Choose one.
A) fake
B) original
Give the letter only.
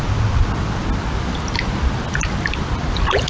B